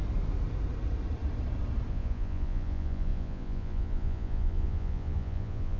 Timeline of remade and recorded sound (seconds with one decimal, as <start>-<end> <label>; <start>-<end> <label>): 0.0-1.9 recorded; 1.9-5.8 remade